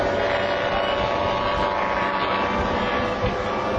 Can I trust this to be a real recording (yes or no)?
yes